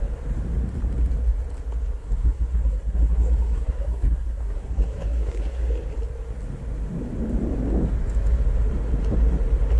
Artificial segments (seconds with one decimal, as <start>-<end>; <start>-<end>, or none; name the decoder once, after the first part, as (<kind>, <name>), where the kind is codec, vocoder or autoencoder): 2.0-5.6 (codec, SNAC)